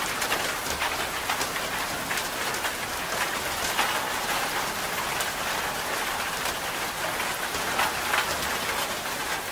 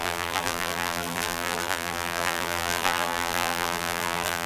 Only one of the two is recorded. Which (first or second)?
first